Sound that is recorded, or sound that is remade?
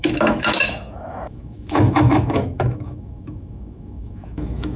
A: remade